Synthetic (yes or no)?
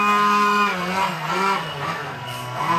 yes